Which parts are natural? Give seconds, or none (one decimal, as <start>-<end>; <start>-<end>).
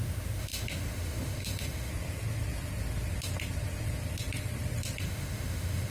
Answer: 1.9-5.0